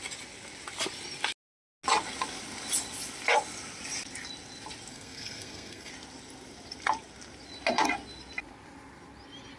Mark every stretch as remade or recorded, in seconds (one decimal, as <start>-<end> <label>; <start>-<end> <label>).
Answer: 0.0-4.9 recorded; 4.9-5.9 remade; 5.9-9.6 recorded